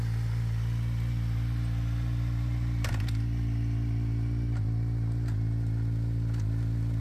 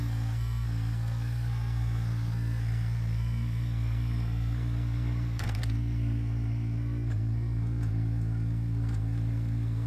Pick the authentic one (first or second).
first